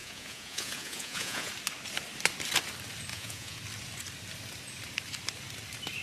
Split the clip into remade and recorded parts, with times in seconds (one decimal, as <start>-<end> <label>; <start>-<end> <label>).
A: 0.0-1.5 remade; 1.5-3.1 recorded; 3.1-3.6 remade; 3.6-6.0 recorded